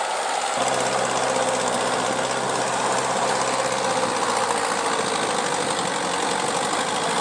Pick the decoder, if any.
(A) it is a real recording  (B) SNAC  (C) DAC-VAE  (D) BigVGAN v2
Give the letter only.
A